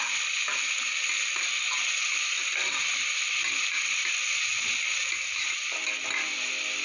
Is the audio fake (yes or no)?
no